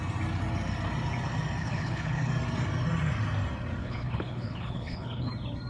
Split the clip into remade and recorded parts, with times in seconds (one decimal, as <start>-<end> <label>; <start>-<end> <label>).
0.0-1.6 recorded; 1.6-2.3 remade; 2.3-3.8 recorded; 3.8-5.3 remade; 5.3-5.7 recorded

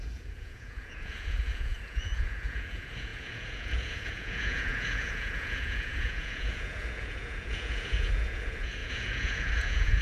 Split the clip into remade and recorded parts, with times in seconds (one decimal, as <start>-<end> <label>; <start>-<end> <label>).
0.0-10.0 remade